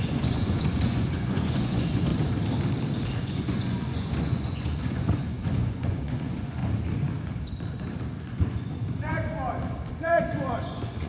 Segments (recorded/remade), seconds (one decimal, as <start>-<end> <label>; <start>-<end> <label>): 0.0-2.1 remade; 2.1-3.2 recorded; 3.2-6.6 remade; 6.6-8.2 recorded; 8.2-9.1 remade; 9.1-9.9 recorded; 9.9-11.1 remade